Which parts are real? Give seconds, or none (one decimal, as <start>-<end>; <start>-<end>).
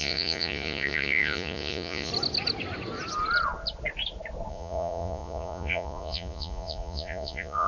2.1-4.5